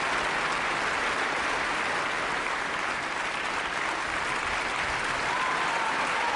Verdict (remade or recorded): recorded